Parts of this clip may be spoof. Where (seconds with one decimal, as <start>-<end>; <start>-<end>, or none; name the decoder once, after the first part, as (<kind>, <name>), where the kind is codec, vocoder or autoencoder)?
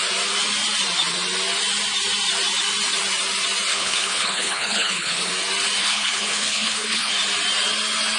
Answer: 3.7-5.3 (codec, HILCodec); 5.8-7.1